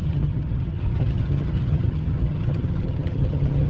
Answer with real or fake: fake